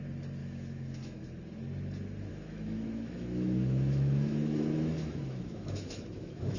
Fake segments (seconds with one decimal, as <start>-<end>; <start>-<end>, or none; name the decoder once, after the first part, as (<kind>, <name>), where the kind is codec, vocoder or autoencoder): 0.4-1.2 (autoencoder, DAC-VAE); 2.3-6.6

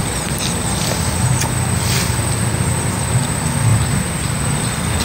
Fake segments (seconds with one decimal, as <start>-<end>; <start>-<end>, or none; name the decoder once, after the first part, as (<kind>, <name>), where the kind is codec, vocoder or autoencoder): none

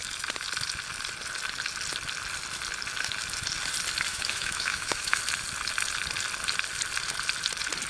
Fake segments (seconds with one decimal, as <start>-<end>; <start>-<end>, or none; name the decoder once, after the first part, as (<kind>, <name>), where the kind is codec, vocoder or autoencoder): 4.1-5.2 (autoencoder, DAC-VAE)

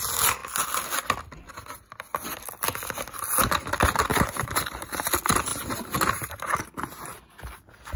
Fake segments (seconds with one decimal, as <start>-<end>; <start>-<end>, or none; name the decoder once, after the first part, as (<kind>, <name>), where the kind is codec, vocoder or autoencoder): 4.1-5.1 (vocoder, BigVGAN v2); 5.5-6.6